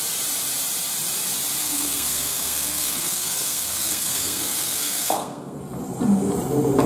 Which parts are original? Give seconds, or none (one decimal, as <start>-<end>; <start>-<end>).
0.0-1.6; 5.6-6.9